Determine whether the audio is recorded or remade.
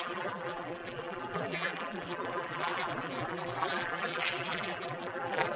remade